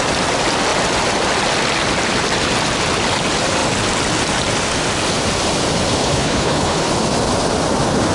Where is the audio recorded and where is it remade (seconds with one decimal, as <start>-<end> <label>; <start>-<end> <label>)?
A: 0.0-6.0 recorded; 6.0-6.9 remade; 6.9-8.1 recorded

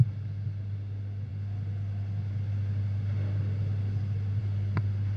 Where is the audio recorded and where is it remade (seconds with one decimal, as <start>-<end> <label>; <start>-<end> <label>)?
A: 0.0-5.2 recorded

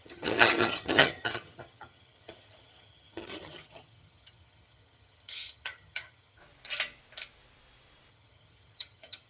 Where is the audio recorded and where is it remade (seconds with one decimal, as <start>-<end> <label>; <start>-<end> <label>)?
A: 0.0-6.4 remade; 6.4-8.1 recorded; 8.1-9.3 remade

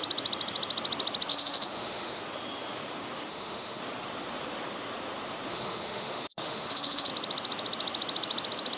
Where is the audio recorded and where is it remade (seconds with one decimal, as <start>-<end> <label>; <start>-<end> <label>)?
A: 0.0-1.3 recorded; 1.3-2.2 remade; 2.2-3.3 recorded; 3.3-3.8 remade; 3.8-5.5 recorded; 5.5-7.1 remade; 7.1-8.8 recorded

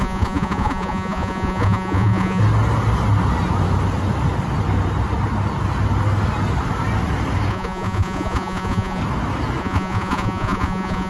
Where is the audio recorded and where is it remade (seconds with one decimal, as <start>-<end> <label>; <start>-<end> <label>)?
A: 0.0-2.4 remade; 2.4-7.5 recorded; 7.5-9.0 remade; 9.0-9.6 recorded; 9.6-11.1 remade

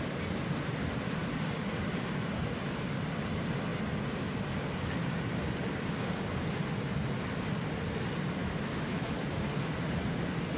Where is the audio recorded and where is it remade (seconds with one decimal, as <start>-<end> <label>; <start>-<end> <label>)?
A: 0.0-8.4 recorded; 8.4-9.1 remade; 9.1-10.6 recorded